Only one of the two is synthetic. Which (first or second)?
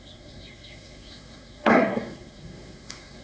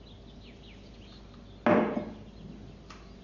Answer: first